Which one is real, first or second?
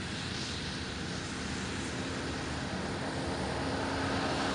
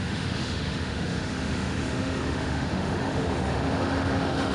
first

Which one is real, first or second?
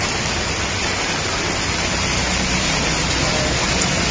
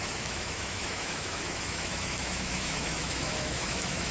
first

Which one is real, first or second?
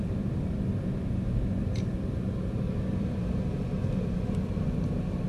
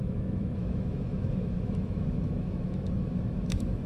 first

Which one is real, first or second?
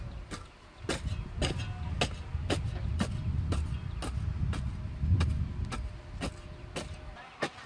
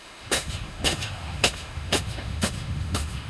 first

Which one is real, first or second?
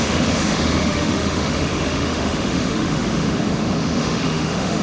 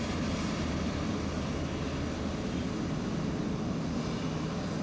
second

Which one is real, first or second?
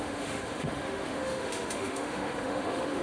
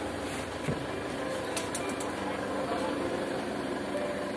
second